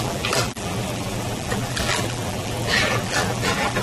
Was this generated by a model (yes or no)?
yes